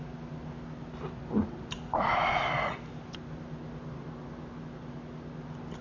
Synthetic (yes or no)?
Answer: no